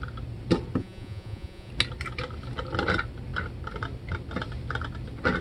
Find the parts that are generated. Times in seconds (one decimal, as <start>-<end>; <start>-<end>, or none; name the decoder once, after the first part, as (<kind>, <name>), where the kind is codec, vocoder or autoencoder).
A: 0.8-1.7 (vocoder, Vocos)